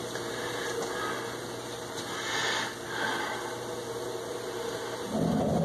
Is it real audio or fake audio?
real